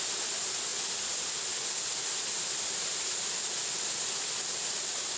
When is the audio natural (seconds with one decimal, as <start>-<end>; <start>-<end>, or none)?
0.0-3.6; 4.5-5.2

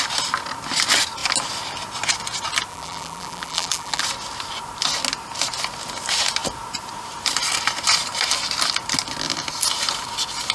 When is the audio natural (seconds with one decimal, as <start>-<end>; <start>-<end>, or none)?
0.0-2.7; 4.0-10.5

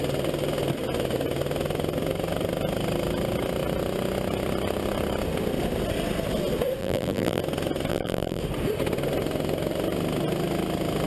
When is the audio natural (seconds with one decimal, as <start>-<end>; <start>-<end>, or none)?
0.0-6.8; 7.4-7.9; 8.4-11.1

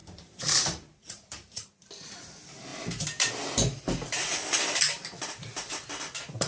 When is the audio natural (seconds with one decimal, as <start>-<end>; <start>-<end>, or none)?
2.3-6.5

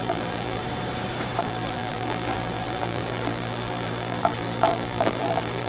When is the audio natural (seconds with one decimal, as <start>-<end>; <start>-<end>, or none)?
0.6-1.4

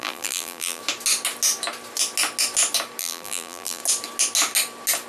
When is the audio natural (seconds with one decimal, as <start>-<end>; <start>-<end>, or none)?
0.8-3.0; 3.8-5.1

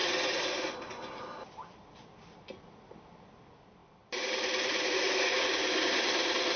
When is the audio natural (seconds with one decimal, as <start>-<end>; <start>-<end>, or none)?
0.0-1.4

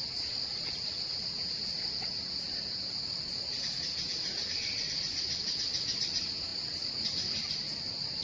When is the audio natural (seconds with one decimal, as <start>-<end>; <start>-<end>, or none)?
0.0-8.2